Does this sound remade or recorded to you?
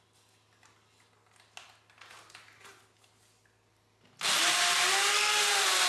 recorded